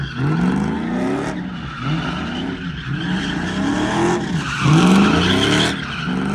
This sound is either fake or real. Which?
real